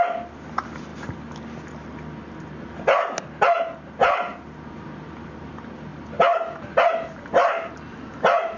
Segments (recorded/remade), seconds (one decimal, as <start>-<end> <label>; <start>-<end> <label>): 0.0-8.6 recorded